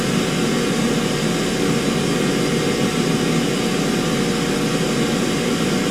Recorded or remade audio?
recorded